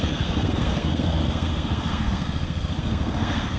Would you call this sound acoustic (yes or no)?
no